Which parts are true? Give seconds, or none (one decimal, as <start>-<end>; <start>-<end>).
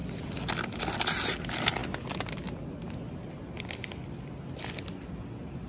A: 0.0-5.7